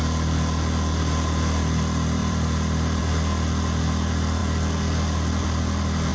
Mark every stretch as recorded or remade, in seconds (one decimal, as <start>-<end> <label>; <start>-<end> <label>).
0.0-2.2 recorded; 2.2-3.0 remade; 3.0-6.1 recorded